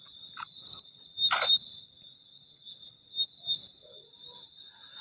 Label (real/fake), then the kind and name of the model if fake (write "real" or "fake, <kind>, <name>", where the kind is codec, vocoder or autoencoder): real